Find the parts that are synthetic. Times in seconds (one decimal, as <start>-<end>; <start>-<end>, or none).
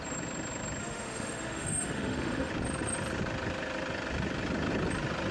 0.8-2.5